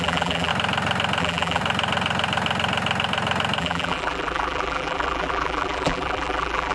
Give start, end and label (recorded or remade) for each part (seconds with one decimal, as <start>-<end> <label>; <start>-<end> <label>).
0.0-0.5 remade; 0.5-1.2 recorded; 1.2-1.6 remade; 1.6-3.6 recorded; 3.6-6.7 remade